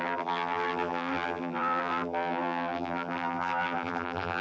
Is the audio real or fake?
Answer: fake